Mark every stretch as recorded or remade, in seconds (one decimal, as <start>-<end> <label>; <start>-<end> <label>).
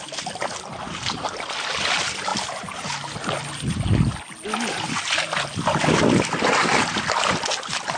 0.0-8.0 recorded